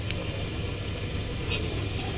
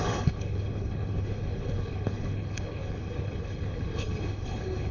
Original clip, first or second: first